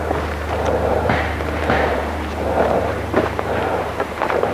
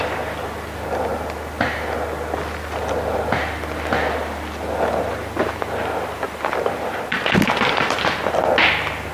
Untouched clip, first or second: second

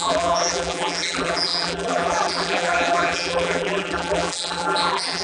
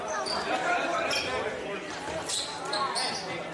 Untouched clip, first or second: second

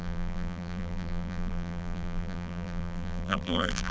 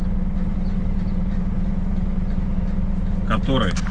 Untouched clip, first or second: second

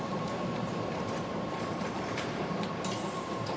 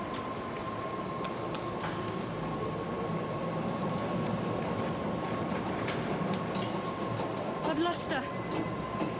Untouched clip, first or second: second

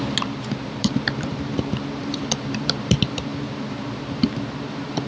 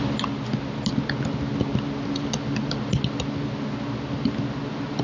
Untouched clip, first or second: second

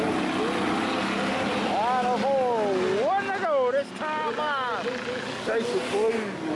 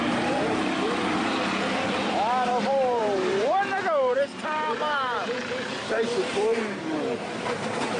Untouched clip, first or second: first